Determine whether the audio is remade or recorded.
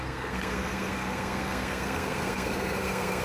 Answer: remade